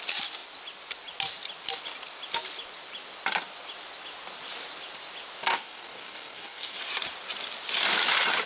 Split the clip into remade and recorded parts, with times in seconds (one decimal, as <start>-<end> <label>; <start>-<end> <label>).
0.0-5.5 recorded; 5.5-6.8 remade; 6.8-8.5 recorded